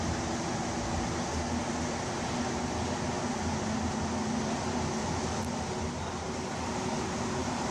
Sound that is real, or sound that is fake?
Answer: real